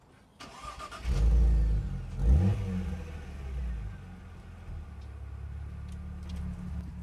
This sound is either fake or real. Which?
real